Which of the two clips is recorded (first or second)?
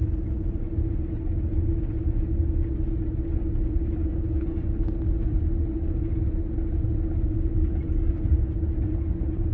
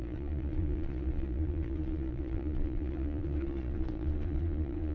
first